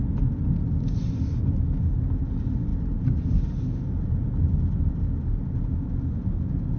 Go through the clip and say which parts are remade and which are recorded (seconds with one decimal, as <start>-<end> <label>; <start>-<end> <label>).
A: 0.0-6.8 recorded